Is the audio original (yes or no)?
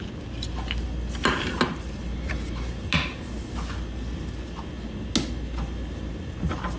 yes